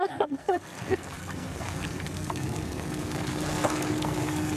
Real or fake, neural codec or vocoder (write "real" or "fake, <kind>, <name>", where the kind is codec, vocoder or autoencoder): fake, codec, SNAC